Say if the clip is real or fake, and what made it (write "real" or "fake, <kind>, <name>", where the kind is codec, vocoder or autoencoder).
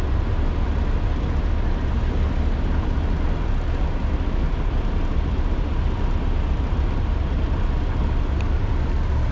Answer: real